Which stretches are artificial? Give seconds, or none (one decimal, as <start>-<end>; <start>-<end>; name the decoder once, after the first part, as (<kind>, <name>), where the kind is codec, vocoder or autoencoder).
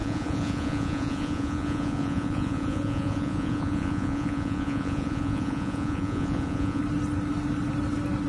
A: 0.0-6.8 (vocoder, Vocos)